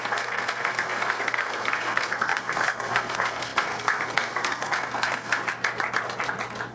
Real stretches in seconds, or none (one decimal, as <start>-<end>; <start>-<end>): 5.4-6.7